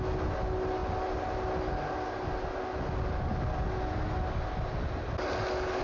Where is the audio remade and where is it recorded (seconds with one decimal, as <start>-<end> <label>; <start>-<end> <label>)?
0.0-5.8 recorded